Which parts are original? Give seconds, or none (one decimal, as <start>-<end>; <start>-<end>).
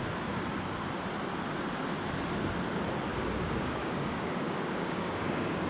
0.0-3.1